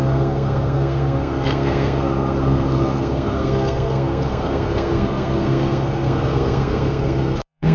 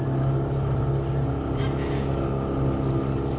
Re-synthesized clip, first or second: first